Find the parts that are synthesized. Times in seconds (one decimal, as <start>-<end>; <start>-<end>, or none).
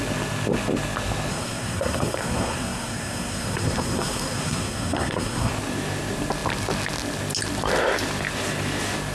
1.3-5.5